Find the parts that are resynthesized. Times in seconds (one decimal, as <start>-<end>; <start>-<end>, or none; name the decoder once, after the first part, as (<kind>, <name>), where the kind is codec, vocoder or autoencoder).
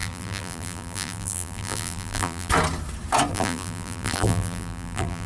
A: 0.0-2.5 (vocoder, BigVGAN v2); 3.3-5.3